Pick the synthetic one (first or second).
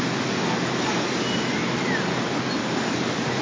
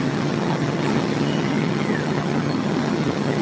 second